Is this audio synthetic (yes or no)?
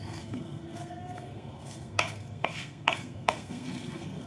yes